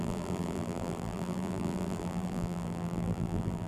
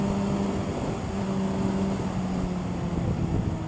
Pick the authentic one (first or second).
second